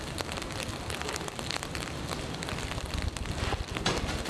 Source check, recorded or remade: recorded